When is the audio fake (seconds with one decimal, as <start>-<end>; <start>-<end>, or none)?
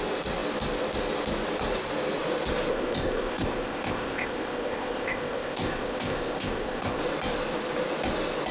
2.7-7.0